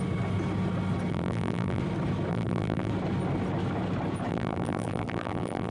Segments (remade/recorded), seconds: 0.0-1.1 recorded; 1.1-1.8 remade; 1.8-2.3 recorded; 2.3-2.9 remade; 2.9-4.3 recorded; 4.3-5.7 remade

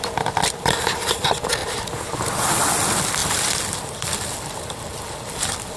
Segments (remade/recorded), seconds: 0.0-1.6 remade; 1.6-2.6 recorded; 2.6-5.8 remade

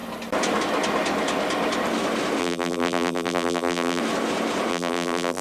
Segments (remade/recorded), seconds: 0.0-2.4 recorded; 2.4-4.0 remade; 4.0-4.7 recorded; 4.7-5.4 remade

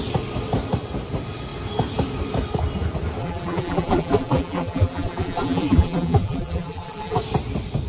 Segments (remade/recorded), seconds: 0.0-3.2 recorded; 3.2-7.2 remade; 7.2-7.9 recorded